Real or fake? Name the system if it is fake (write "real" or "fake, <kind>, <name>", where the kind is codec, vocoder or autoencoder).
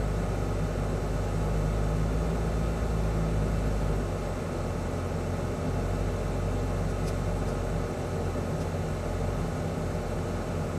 real